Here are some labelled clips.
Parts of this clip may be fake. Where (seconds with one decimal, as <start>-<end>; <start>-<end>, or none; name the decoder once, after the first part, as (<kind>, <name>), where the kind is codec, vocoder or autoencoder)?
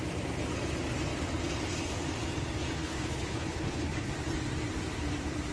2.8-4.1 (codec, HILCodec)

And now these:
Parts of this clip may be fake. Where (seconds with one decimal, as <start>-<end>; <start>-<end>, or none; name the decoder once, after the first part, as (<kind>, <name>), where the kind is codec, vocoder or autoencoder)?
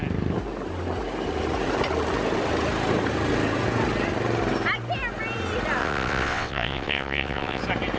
5.8-7.6 (vocoder, WaveNeXt)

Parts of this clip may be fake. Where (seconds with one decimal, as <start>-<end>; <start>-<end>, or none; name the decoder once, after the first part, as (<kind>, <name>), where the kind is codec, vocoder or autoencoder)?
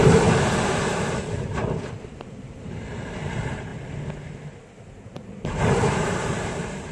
0.0-3.7 (vocoder, BigVGAN v2); 4.9-6.9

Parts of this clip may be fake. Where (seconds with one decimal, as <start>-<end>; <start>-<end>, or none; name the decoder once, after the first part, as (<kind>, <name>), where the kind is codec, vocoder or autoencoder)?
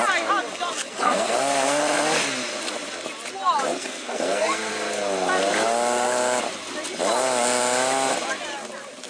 0.9-1.8 (codec, SNAC); 3.7-4.7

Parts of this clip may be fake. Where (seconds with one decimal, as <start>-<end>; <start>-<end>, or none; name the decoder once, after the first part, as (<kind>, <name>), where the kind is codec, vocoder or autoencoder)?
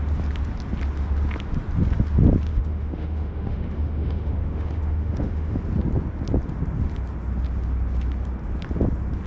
2.5-5.6 (autoencoder, DAC-VAE)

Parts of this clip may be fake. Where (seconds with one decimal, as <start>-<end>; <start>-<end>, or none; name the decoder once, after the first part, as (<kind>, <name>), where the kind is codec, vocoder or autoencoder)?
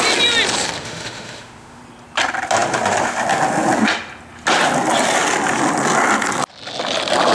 0.8-1.8 (autoencoder, DAC-VAE)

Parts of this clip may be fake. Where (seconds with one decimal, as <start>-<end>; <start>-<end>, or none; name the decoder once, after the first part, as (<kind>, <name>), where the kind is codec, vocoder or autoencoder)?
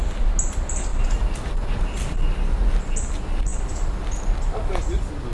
none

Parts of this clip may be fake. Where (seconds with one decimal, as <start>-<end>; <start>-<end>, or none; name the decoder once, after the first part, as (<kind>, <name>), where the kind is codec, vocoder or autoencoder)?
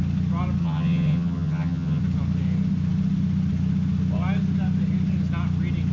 0.6-2.0 (vocoder, HiFi-GAN)